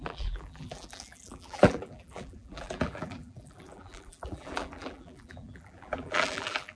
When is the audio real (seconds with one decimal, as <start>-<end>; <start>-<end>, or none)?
none